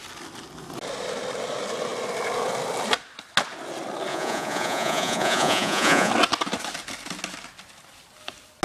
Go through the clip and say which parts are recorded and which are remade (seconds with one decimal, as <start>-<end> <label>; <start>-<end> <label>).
0.0-4.1 recorded; 4.1-6.1 remade; 6.1-8.6 recorded